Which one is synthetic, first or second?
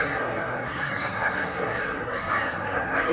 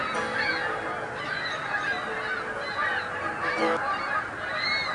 first